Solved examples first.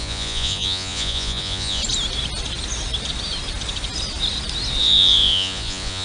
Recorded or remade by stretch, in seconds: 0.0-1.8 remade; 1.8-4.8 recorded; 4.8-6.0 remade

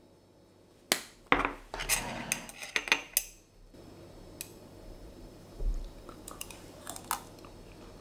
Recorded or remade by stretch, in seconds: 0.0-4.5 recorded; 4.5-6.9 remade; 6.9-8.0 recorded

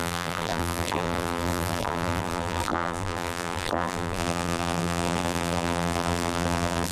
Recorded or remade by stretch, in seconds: 0.0-6.9 remade